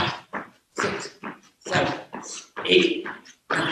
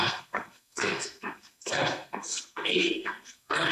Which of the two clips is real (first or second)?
first